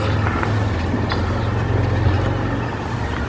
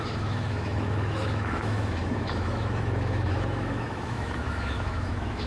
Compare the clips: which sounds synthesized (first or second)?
second